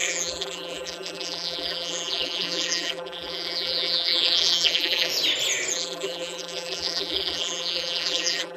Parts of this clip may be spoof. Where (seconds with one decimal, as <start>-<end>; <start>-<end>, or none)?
0.0-5.1; 5.7-8.6